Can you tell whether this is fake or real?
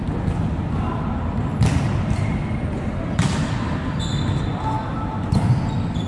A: real